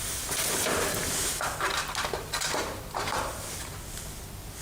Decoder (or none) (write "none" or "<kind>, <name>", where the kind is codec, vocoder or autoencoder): none